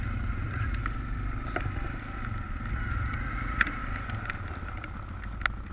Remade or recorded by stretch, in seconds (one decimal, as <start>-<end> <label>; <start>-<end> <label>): 0.0-0.8 remade; 0.8-2.7 recorded; 2.7-3.8 remade; 3.8-5.7 recorded